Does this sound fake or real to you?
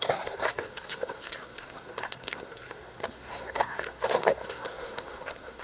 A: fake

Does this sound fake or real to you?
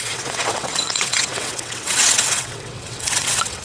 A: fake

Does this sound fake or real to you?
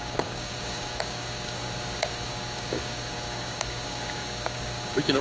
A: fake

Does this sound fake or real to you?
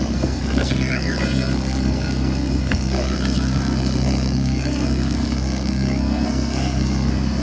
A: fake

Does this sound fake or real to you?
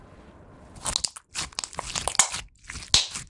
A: real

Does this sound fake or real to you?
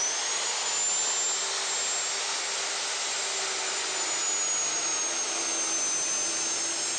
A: real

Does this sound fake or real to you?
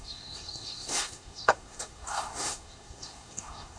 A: fake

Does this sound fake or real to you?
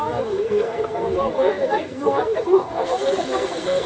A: fake